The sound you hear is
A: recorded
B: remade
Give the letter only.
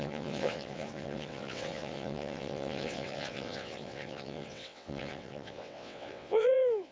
B